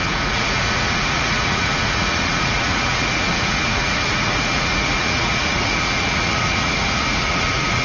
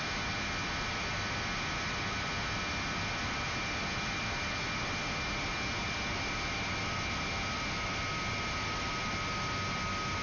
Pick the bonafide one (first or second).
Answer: second